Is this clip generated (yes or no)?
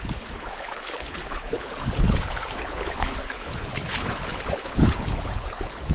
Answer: yes